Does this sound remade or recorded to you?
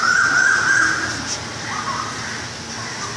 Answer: recorded